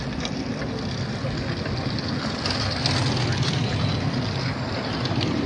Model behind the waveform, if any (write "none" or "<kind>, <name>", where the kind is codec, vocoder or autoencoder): none